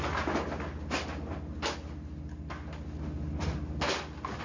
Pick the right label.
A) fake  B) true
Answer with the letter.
B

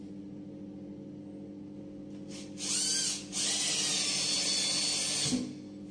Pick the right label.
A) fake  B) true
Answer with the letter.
B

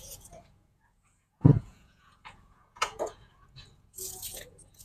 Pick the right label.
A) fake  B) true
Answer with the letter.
A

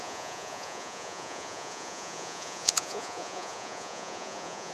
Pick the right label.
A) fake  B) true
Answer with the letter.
A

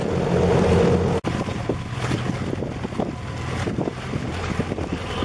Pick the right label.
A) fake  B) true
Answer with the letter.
B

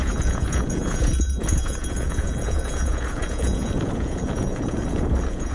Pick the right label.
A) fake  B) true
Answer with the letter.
A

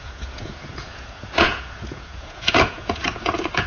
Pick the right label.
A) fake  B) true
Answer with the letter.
A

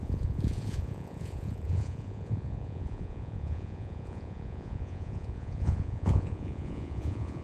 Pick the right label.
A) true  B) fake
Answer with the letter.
B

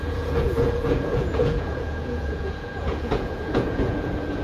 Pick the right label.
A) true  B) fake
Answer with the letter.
B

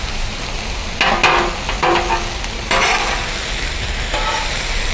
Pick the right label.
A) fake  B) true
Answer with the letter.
B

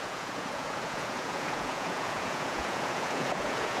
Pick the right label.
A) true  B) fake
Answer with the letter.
B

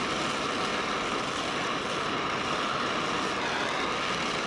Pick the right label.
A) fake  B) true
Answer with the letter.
B